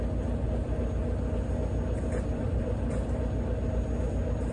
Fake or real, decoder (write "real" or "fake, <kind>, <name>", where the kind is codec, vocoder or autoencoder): real